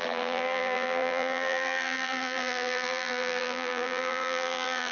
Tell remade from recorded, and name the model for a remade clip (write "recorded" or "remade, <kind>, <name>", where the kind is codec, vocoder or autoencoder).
remade, vocoder, BigVGAN v2